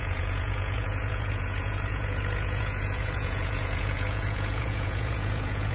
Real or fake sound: fake